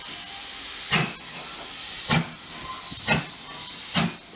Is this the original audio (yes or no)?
yes